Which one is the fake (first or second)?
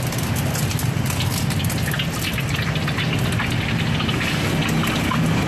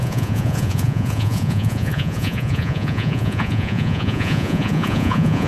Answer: second